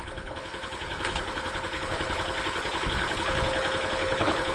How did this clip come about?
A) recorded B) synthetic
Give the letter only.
B